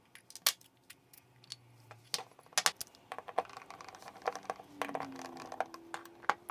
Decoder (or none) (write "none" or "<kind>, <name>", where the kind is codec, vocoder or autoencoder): none